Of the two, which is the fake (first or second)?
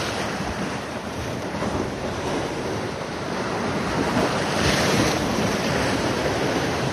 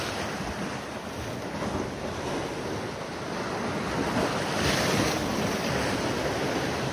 first